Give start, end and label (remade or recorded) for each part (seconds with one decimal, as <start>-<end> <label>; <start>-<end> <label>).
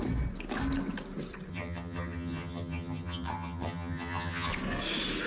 0.0-1.5 recorded; 1.5-4.5 remade; 4.5-5.3 recorded